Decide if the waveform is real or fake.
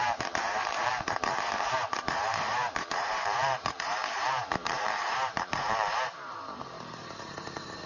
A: fake